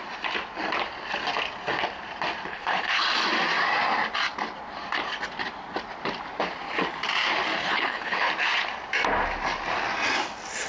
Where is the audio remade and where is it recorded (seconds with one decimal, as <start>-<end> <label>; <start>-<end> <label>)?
0.0-2.5 recorded; 2.5-3.0 remade; 3.0-7.6 recorded; 7.6-8.3 remade; 8.3-10.7 recorded